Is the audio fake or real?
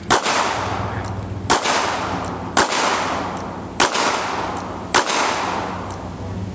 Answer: real